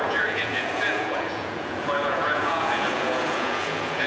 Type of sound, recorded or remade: remade